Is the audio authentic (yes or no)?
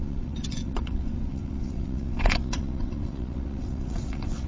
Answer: no